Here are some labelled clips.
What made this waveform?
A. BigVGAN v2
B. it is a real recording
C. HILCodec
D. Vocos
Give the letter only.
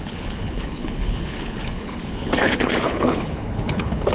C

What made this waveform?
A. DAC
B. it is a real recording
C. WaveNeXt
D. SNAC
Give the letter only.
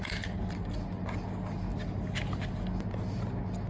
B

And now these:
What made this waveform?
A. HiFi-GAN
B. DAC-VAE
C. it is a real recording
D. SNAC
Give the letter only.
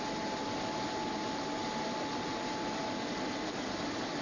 C